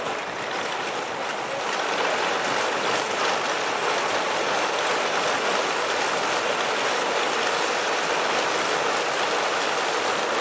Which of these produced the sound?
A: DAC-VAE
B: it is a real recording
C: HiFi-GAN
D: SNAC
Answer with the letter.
B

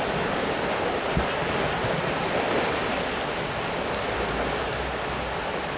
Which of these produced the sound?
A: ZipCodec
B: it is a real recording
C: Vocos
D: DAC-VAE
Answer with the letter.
B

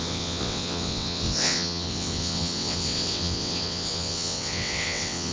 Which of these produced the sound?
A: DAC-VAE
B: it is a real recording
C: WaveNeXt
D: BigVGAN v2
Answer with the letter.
C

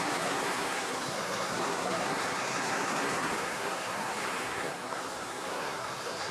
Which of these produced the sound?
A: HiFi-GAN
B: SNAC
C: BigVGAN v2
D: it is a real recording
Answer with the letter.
B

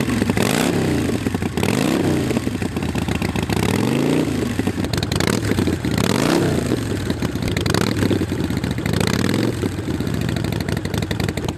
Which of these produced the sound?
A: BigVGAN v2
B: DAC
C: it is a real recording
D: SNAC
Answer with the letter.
A